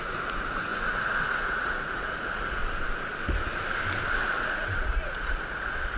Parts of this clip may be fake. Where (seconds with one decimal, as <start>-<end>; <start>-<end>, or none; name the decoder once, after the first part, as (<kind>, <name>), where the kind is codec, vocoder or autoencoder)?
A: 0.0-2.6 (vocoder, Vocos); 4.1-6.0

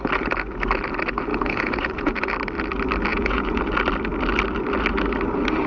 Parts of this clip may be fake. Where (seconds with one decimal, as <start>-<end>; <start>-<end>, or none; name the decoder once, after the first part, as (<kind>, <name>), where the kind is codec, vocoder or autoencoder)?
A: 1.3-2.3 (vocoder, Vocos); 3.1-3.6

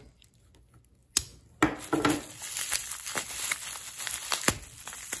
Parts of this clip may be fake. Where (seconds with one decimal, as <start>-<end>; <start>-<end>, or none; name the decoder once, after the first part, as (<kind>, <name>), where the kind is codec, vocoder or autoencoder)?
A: none